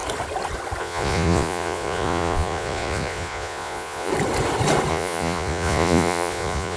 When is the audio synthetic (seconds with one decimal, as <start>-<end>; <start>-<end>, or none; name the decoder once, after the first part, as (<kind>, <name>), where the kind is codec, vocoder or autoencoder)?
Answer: 0.8-4.1 (vocoder, Vocos); 4.9-6.8